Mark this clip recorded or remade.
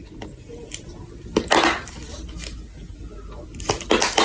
recorded